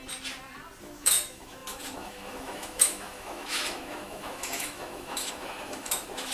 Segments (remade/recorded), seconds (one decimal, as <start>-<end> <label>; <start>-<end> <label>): 0.0-0.8 recorded; 0.8-6.3 remade